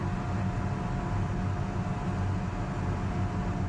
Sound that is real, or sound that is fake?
real